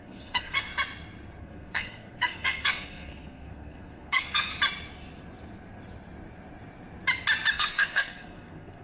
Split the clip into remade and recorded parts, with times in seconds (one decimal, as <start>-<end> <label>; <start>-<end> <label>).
0.0-0.7 remade; 0.7-1.4 recorded; 1.4-4.5 remade; 4.5-7.5 recorded; 7.5-8.8 remade